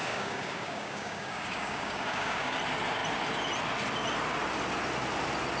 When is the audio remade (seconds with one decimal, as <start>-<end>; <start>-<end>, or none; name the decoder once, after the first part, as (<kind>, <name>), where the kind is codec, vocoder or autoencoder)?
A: 0.0-2.6 (codec, DAC)